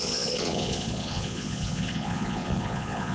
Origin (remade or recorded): remade